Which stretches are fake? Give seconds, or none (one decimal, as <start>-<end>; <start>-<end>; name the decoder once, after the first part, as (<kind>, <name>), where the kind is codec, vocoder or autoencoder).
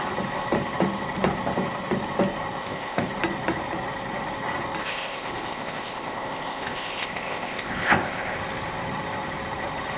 2.6-3.1 (codec, ZipCodec); 4.8-8.4